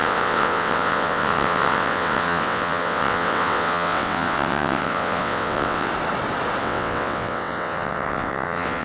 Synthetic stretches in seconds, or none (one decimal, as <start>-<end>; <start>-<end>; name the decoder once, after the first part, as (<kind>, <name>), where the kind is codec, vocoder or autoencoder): 0.0-5.9 (vocoder, WaveNeXt); 6.6-8.8